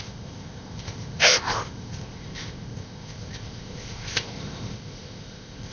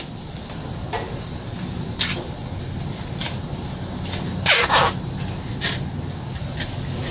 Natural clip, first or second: second